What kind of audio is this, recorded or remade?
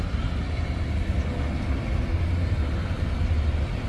recorded